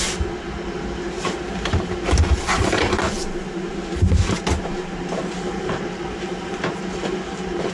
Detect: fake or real fake